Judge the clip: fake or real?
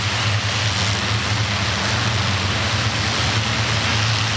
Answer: real